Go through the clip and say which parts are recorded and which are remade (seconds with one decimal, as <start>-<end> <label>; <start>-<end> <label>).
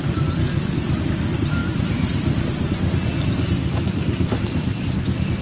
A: 0.0-0.4 recorded; 0.4-1.0 remade; 1.0-5.4 recorded